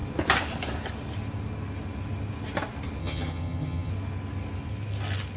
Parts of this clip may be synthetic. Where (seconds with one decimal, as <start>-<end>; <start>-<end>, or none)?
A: 3.0-3.9